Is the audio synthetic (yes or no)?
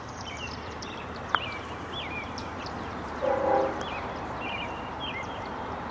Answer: yes